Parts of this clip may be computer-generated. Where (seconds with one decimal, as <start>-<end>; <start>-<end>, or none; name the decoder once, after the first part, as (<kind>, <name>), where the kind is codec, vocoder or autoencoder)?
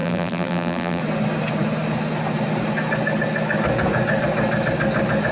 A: 0.0-1.0 (vocoder, BigVGAN v2)